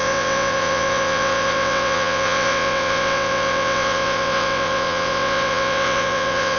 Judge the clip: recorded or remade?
remade